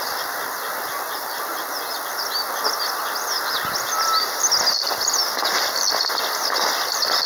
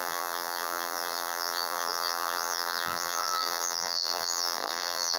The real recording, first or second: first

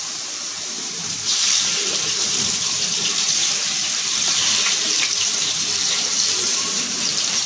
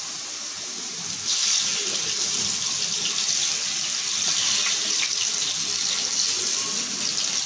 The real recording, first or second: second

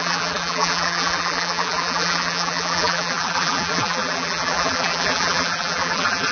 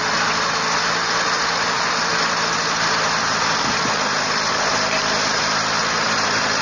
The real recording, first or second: second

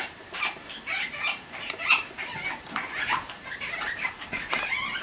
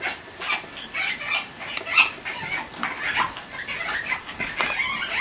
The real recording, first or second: second